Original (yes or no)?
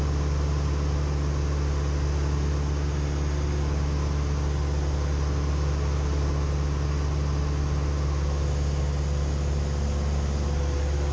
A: yes